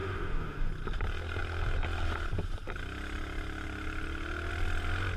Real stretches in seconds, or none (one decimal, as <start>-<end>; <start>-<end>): 0.7-5.2